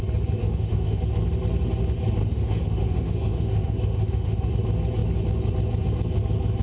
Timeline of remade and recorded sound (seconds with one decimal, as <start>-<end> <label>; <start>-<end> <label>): 0.0-0.4 recorded; 0.4-1.0 remade; 1.0-2.2 recorded; 2.2-4.5 remade; 4.5-6.6 recorded